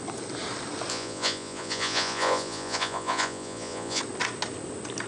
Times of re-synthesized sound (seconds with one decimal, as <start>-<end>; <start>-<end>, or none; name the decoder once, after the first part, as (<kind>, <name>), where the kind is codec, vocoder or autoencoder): 0.9-4.0 (vocoder, Vocos)